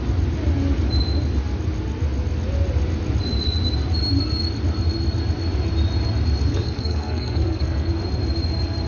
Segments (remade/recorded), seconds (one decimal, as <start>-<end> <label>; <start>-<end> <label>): 0.0-6.5 recorded; 6.5-7.9 remade; 7.9-8.9 recorded